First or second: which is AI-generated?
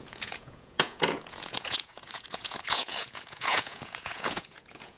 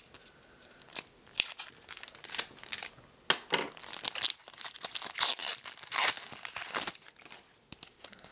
first